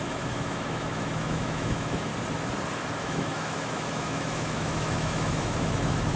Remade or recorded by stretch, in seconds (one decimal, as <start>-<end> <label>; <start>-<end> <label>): 0.0-2.1 remade; 2.1-3.0 recorded; 3.0-6.2 remade